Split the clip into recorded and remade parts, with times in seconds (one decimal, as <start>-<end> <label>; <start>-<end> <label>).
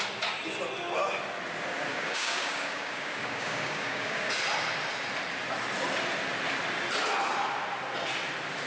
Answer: 0.0-1.9 recorded; 1.9-4.3 remade; 4.3-8.7 recorded